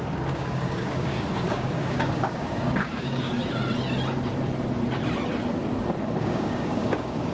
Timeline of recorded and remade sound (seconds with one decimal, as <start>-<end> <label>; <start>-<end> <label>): 0.0-3.4 remade; 3.4-5.9 recorded; 5.9-7.3 remade